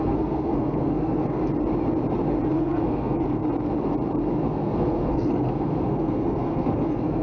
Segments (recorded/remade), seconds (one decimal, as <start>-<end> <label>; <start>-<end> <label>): 0.0-1.4 remade; 1.4-2.5 recorded; 2.5-3.4 remade; 3.4-4.4 recorded; 4.4-7.2 remade